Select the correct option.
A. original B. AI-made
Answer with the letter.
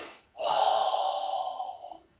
B